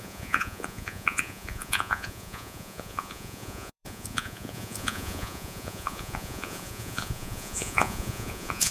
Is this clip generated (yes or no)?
yes